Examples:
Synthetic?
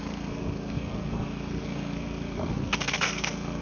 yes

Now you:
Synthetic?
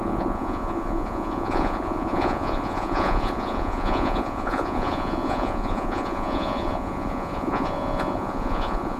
yes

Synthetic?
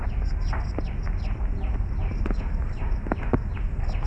no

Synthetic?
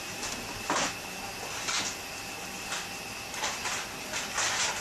no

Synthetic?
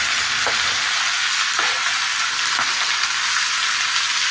no